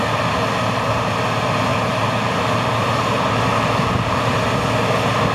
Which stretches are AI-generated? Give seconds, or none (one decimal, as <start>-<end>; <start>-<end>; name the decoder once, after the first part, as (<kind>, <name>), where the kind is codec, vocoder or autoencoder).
1.7-4.3 (vocoder, BigVGAN v2)